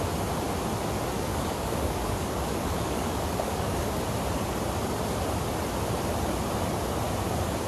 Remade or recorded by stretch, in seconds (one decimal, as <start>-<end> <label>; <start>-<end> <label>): 0.0-1.3 recorded; 1.3-3.9 remade; 3.9-7.7 recorded